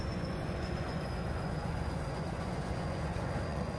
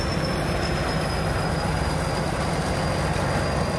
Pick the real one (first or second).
second